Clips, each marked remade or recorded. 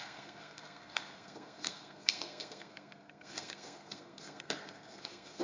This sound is remade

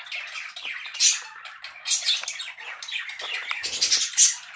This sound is recorded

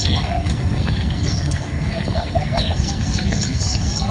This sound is remade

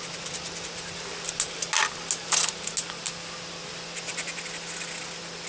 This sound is recorded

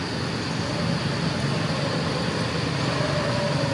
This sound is recorded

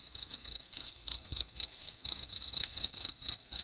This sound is remade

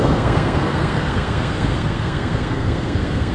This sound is remade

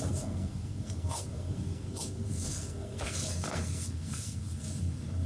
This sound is remade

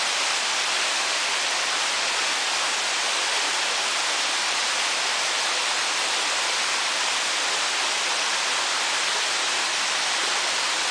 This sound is recorded